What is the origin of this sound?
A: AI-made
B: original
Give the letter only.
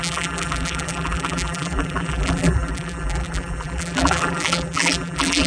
A